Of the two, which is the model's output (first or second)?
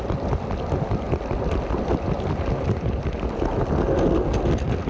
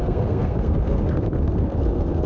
second